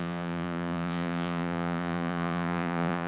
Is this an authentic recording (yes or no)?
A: no